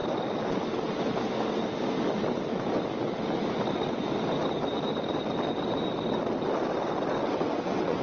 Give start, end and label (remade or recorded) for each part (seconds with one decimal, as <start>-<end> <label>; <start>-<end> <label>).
0.0-7.2 recorded; 7.2-8.0 remade